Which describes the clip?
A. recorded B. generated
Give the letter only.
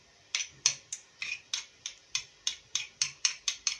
B